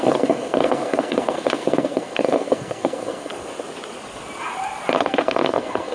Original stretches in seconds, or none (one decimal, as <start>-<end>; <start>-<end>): 3.3-5.0